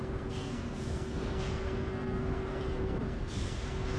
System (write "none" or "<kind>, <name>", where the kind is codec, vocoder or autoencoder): codec, SNAC